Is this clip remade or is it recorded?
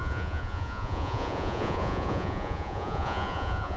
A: remade